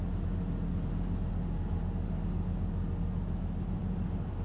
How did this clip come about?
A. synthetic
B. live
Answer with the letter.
B